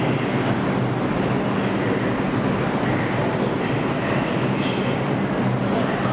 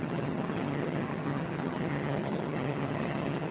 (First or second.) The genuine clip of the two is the first